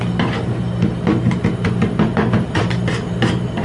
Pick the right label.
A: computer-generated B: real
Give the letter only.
B